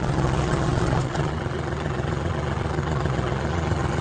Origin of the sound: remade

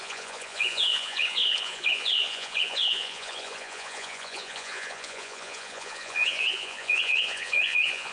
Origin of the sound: remade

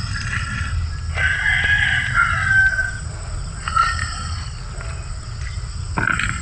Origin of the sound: recorded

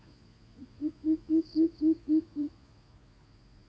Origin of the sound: remade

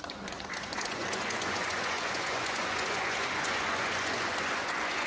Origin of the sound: remade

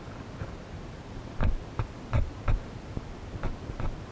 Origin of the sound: recorded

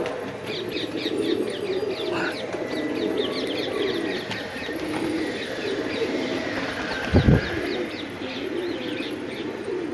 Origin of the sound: recorded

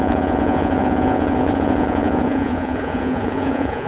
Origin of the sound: remade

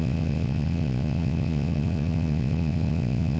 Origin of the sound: remade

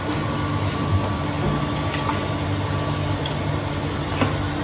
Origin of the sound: recorded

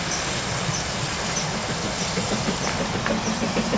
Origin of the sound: recorded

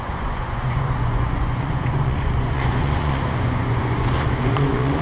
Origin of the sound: remade